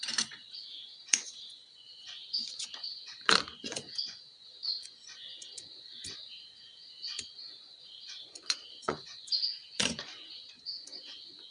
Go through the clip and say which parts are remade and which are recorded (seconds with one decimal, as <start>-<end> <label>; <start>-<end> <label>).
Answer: 0.0-11.5 remade